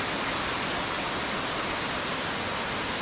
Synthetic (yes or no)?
no